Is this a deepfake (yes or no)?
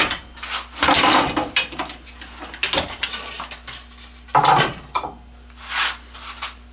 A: no